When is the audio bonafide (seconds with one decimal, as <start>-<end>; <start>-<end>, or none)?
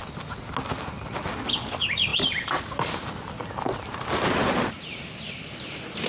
0.0-6.1